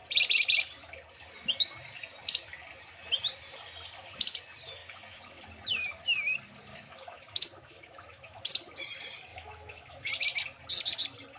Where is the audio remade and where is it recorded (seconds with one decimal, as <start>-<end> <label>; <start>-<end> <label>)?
0.0-4.8 recorded; 4.8-5.4 remade; 5.4-6.7 recorded; 6.7-8.5 remade; 8.5-9.3 recorded; 9.3-10.1 remade; 10.1-11.4 recorded